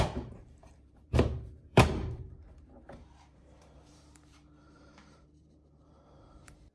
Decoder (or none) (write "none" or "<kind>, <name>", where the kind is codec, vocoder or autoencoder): vocoder, BigVGAN v2